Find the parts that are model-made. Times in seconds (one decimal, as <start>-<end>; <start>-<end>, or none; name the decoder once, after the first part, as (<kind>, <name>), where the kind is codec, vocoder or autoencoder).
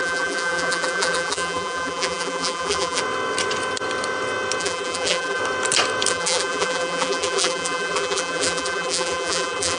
0.0-3.0 (vocoder, BigVGAN v2); 4.6-5.4; 6.1-9.8